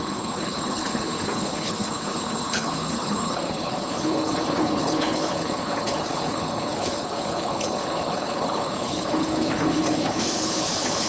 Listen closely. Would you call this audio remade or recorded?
remade